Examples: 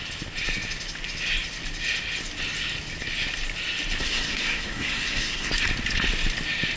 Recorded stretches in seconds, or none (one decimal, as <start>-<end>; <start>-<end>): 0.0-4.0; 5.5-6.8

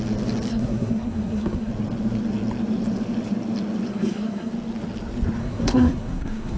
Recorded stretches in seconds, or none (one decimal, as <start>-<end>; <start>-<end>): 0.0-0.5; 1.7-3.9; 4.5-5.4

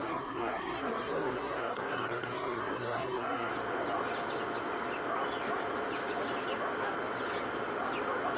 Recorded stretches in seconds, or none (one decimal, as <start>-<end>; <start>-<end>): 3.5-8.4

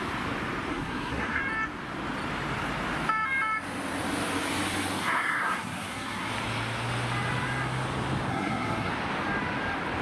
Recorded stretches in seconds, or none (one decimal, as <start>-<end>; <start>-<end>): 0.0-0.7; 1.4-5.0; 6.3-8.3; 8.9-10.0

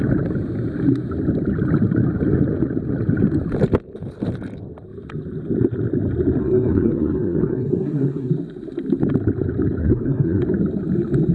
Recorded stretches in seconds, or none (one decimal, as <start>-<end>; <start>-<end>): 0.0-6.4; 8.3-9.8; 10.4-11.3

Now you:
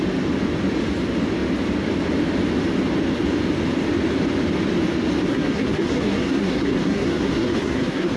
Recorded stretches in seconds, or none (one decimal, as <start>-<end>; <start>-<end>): 0.0-5.3

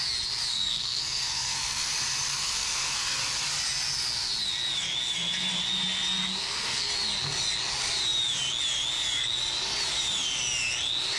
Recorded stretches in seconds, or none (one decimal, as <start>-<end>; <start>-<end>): 0.0-0.5; 1.9-2.3; 3.2-6.4; 6.9-11.2

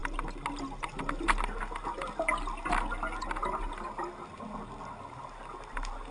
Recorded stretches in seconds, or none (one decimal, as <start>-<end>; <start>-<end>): 0.0-6.1